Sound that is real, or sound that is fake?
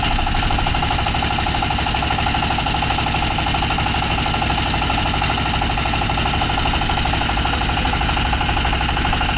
real